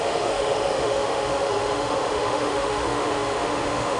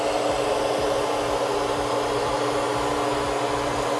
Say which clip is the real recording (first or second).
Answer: second